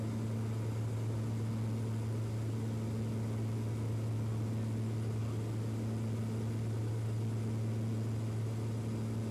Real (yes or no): yes